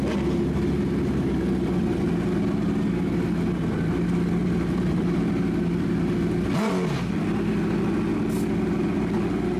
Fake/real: real